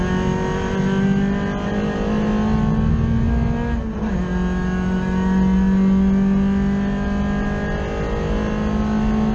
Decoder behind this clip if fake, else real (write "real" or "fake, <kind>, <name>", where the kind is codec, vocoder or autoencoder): real